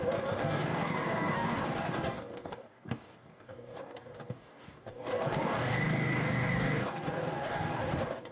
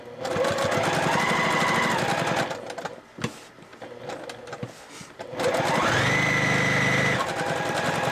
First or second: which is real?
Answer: second